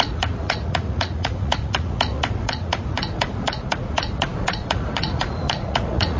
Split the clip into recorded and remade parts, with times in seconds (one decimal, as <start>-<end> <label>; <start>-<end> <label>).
0.0-6.2 remade